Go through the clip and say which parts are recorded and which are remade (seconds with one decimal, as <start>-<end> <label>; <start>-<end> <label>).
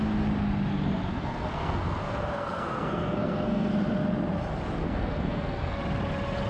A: 0.0-1.1 recorded; 1.1-3.7 remade; 3.7-4.8 recorded; 4.8-5.8 remade; 5.8-6.5 recorded